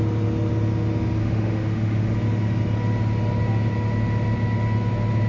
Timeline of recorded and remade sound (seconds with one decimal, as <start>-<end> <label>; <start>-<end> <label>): 0.0-1.2 recorded; 1.2-2.1 remade; 2.1-5.3 recorded